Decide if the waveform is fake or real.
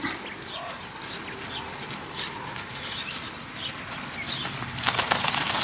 real